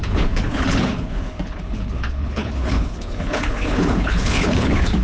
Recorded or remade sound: remade